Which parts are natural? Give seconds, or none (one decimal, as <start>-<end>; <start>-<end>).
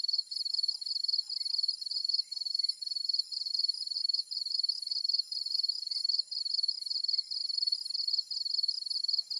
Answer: 0.0-1.9; 6.4-9.4